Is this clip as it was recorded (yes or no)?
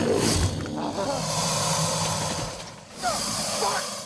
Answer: yes